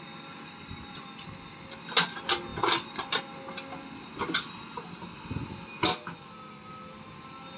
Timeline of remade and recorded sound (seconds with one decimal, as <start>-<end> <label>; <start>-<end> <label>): 0.0-7.6 recorded